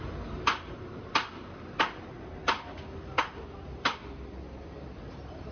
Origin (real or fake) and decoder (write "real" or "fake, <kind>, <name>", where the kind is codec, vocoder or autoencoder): real